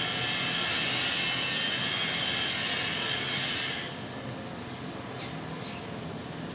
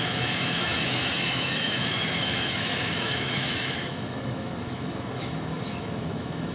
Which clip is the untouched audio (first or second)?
first